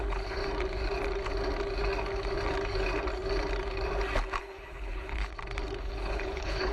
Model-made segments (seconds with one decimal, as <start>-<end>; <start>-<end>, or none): 0.0-0.4; 4.4-5.3; 5.8-6.7